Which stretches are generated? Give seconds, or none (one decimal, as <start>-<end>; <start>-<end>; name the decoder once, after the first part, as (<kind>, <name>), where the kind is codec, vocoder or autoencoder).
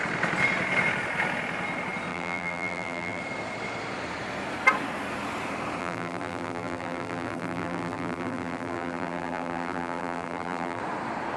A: 2.1-3.2 (vocoder, BigVGAN v2); 5.8-10.8